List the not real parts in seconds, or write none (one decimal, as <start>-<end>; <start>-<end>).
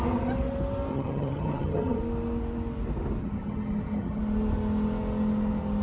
0.9-2.0; 3.2-4.2